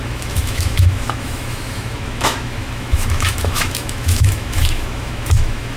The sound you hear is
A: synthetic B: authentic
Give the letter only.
A